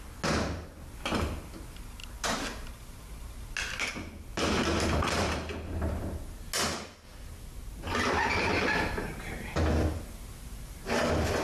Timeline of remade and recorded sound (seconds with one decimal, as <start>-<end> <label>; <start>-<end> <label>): 0.0-11.4 recorded